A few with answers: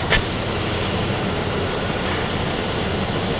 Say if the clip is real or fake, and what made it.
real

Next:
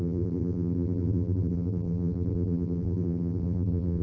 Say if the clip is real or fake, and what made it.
fake, vocoder, BigVGAN v2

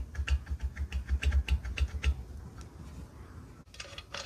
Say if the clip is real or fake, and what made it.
real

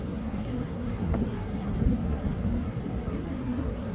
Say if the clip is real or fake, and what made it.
fake, codec, SNAC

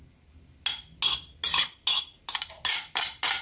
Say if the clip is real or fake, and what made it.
real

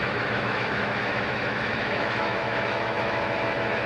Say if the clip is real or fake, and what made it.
fake, autoencoder, DAC-VAE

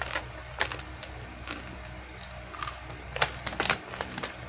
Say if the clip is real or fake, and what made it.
real